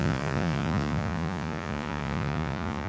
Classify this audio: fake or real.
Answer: fake